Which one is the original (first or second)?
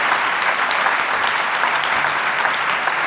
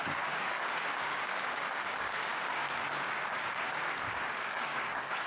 first